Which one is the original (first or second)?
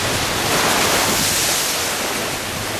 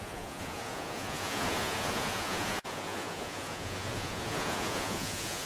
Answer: first